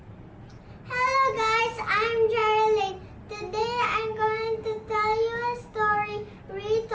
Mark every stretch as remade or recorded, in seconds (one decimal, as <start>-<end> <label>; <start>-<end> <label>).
0.0-3.6 recorded; 3.6-6.4 remade; 6.4-6.9 recorded